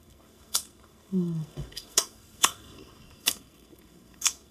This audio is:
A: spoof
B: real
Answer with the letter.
A